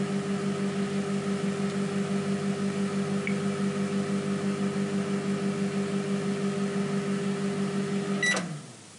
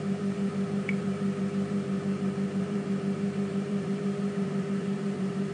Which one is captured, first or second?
first